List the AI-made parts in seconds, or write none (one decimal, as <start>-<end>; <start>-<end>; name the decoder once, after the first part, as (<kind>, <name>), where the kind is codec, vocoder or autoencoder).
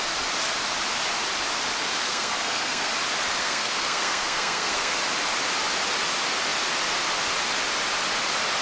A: 2.0-2.9 (codec, SNAC); 3.4-5.0